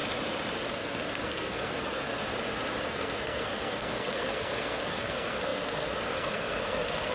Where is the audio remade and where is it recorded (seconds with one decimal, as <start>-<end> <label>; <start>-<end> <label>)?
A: 0.0-0.7 recorded; 0.7-2.2 remade; 2.2-2.8 recorded; 2.8-7.1 remade